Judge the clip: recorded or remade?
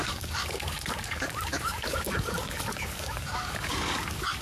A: remade